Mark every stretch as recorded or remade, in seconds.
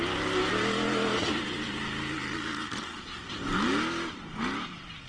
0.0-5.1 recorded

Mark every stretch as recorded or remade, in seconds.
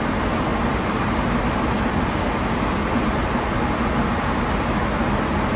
0.0-5.6 recorded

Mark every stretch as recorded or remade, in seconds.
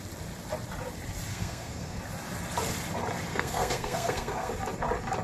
0.0-1.3 recorded; 1.3-2.0 remade; 2.0-3.3 recorded; 3.3-4.5 remade; 4.5-5.2 recorded